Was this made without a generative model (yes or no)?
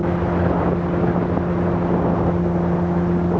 yes